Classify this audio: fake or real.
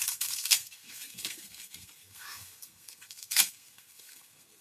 fake